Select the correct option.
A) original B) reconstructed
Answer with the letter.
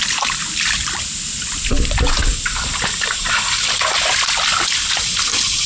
A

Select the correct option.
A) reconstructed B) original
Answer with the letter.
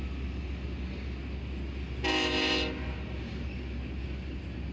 B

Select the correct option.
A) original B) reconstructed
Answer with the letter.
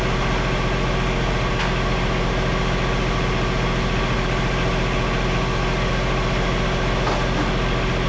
A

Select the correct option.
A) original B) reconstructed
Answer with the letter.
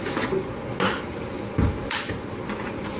A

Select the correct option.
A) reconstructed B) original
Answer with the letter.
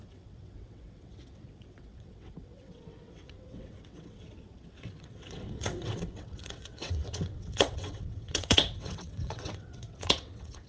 A